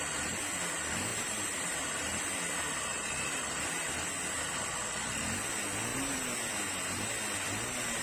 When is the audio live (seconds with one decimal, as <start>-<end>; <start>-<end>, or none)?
0.0-1.1; 2.2-2.9; 3.9-5.9; 6.4-8.0